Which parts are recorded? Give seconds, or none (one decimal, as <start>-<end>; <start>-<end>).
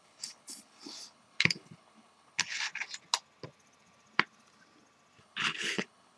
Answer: 2.7-5.2